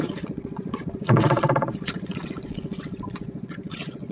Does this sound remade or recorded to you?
remade